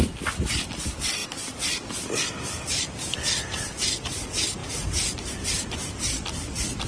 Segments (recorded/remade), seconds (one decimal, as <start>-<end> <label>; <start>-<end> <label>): 0.0-6.9 recorded